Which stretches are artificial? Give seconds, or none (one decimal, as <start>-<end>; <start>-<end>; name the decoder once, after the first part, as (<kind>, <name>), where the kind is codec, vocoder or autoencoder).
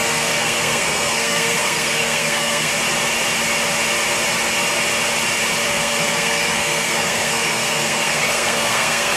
0.0-2.7 (codec, SNAC); 5.7-9.2